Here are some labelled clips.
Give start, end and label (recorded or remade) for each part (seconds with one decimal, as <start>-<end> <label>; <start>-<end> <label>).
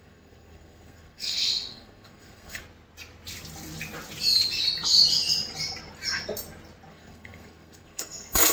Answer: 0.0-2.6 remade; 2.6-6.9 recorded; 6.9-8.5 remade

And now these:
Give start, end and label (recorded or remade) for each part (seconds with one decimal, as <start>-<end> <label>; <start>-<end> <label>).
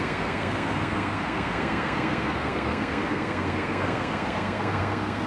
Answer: 0.0-5.3 remade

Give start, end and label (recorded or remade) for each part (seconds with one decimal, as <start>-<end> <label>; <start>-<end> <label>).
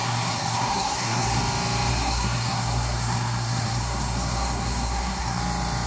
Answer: 0.0-1.4 remade; 1.4-1.9 recorded; 1.9-5.4 remade; 5.4-5.9 recorded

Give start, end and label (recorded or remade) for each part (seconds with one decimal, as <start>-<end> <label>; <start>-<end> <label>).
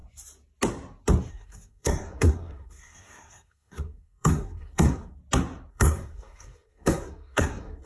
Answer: 0.0-1.3 recorded; 1.3-5.2 remade; 5.2-5.7 recorded; 5.7-7.9 remade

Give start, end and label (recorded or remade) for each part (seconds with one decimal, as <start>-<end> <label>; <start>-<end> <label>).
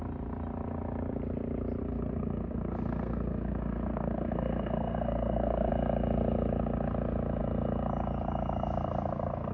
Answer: 0.0-1.8 recorded; 1.8-5.7 remade; 5.7-9.5 recorded